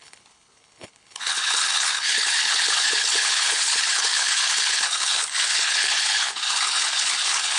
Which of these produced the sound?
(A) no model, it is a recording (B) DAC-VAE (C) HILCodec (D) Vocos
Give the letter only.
C